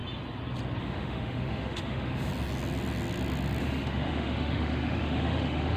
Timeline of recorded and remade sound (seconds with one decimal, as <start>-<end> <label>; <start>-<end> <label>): 0.0-0.8 recorded; 0.8-2.3 remade; 2.3-3.6 recorded; 3.6-5.8 remade